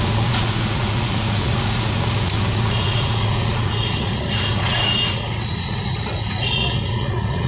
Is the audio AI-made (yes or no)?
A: yes